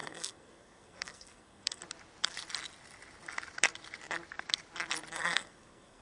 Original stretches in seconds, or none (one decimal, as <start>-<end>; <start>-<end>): 1.8-5.1